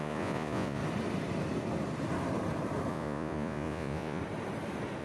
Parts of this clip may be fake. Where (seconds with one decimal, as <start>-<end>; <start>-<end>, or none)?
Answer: 0.0-0.8; 2.9-4.2